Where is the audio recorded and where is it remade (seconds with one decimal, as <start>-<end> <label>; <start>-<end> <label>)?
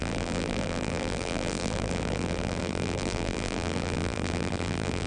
0.0-5.1 remade